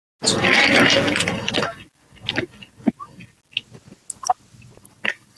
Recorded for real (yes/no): yes